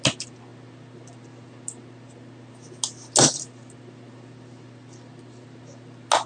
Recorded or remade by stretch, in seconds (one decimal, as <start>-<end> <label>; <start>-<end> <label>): 0.0-6.3 recorded

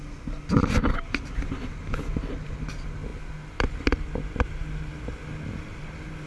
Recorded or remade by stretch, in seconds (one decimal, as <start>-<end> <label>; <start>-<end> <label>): 0.0-6.3 recorded

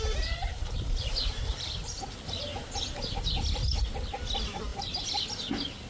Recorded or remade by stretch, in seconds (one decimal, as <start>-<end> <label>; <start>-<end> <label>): 0.0-0.5 recorded; 0.5-1.1 remade; 1.1-2.5 recorded; 2.5-3.2 remade; 3.2-4.7 recorded; 4.7-5.3 remade; 5.3-5.9 recorded